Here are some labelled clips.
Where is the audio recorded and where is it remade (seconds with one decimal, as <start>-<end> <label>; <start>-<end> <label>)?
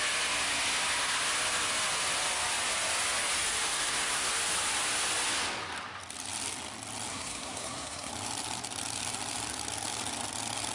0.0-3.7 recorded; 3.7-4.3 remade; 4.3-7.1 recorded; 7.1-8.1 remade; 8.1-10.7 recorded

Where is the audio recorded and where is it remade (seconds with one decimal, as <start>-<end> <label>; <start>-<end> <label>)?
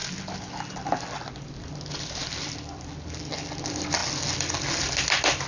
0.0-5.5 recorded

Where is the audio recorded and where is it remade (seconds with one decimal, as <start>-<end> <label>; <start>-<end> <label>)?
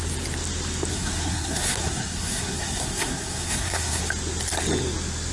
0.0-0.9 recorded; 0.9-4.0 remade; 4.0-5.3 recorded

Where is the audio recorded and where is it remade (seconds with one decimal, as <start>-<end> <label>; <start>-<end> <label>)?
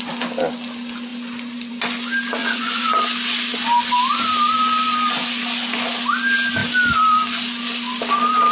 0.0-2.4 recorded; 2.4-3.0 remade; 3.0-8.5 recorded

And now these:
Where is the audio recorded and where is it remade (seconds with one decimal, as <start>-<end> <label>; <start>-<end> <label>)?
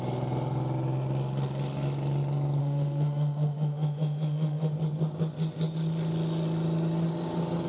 0.0-2.6 recorded; 2.6-4.7 remade; 4.7-7.7 recorded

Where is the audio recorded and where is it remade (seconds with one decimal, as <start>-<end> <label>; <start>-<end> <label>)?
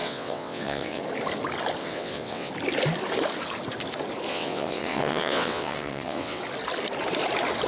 0.0-1.0 remade; 1.0-1.8 recorded; 1.8-2.5 remade; 2.5-4.3 recorded; 4.3-6.4 remade; 6.4-7.7 recorded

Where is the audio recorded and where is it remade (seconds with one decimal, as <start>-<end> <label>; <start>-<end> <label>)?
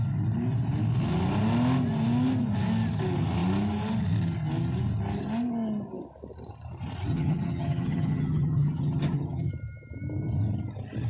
0.0-7.1 recorded; 7.1-9.5 remade; 9.5-11.1 recorded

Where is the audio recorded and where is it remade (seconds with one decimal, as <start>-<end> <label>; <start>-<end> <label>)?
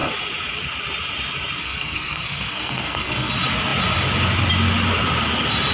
0.0-1.6 recorded; 1.6-3.3 remade; 3.3-5.7 recorded